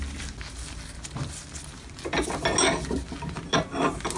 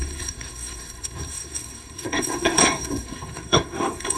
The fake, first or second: second